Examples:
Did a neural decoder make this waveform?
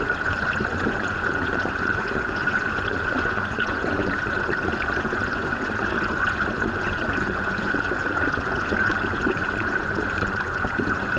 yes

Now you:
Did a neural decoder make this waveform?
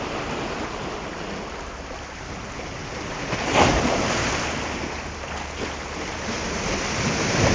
no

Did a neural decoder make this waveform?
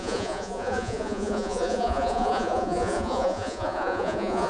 yes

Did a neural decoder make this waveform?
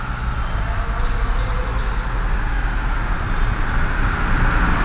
no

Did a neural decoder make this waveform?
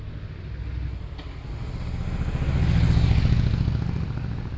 no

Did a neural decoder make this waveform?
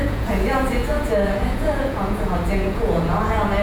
yes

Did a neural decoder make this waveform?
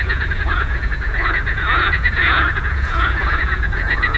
yes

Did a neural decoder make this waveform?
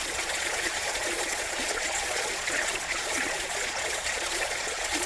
yes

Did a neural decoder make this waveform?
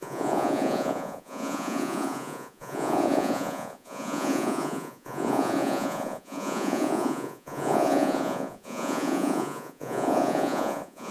yes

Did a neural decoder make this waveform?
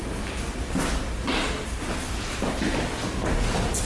no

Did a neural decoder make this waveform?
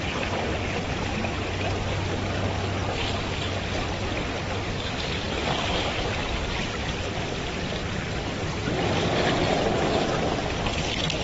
no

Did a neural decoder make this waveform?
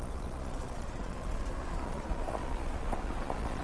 yes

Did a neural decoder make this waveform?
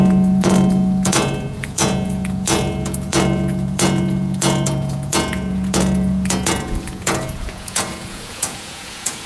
yes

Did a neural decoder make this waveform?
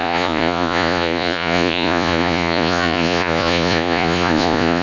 yes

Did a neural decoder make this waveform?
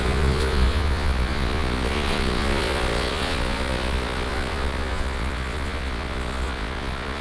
yes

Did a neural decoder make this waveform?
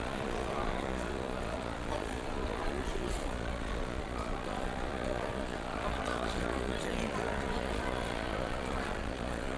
yes